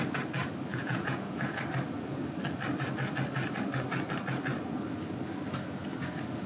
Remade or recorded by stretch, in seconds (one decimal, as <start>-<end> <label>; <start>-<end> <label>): 0.0-0.7 recorded; 0.7-1.6 remade; 1.6-6.5 recorded